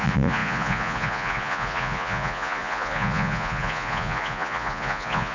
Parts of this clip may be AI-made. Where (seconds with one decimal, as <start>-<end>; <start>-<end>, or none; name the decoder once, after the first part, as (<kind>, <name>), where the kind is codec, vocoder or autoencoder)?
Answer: 0.0-5.3 (vocoder, Vocos)